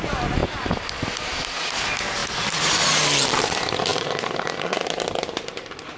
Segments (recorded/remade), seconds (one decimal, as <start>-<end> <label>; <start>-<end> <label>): 0.0-6.0 recorded